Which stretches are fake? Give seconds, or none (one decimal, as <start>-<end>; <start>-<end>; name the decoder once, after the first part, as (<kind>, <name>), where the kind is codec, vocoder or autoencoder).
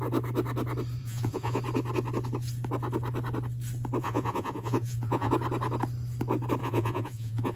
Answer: 1.0-1.6 (vocoder, Vocos); 4.0-5.3; 6.6-7.6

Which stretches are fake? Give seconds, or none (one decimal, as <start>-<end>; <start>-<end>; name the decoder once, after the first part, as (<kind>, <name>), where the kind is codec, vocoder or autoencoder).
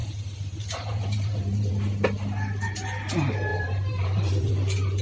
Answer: 0.0-1.7 (vocoder, BigVGAN v2); 3.5-4.5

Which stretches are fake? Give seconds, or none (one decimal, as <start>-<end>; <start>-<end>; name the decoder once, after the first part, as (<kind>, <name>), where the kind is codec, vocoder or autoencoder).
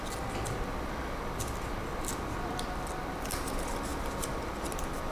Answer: 0.0-5.1 (vocoder, BigVGAN v2)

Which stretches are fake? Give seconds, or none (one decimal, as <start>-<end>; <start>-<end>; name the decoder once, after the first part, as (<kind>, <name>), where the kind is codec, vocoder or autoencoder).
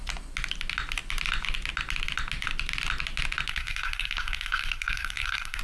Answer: 3.5-5.6 (codec, SNAC)